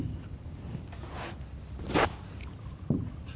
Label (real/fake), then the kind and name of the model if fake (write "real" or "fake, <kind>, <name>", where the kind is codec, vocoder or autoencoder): real